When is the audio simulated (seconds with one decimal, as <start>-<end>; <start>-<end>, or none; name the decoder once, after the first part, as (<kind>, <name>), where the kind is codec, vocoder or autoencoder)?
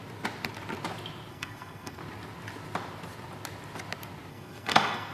1.3-2.0 (codec, SNAC); 4.3-5.1